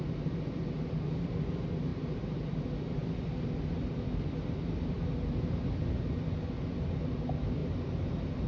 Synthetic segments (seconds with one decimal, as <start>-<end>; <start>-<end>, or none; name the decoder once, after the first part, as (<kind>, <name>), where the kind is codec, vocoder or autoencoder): 1.9-2.6 (vocoder, BigVGAN v2)